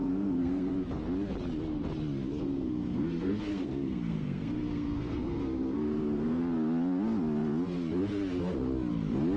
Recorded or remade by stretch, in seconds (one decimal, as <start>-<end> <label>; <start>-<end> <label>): 0.0-0.7 remade; 0.7-2.4 recorded; 2.4-6.4 remade; 6.4-9.4 recorded